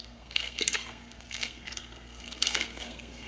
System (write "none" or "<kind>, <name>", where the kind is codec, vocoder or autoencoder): codec, SNAC